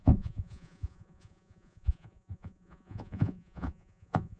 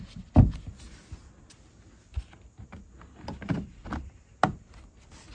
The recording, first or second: second